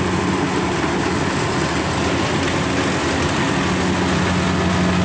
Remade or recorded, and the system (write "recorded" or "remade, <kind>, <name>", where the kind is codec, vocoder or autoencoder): recorded